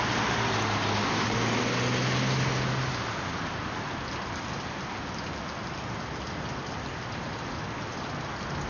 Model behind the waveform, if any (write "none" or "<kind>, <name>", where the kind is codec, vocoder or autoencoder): none